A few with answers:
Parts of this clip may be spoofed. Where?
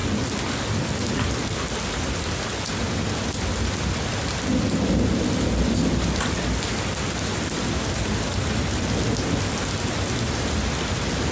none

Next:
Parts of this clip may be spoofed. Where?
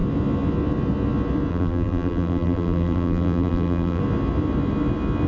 1.5-4.0 (vocoder, BigVGAN v2)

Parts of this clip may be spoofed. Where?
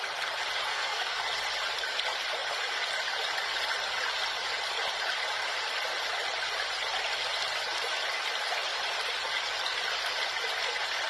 0.7-1.2 (codec, SNAC)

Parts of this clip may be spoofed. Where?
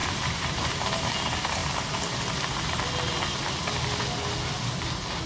0.0-1.0 (vocoder, BigVGAN v2)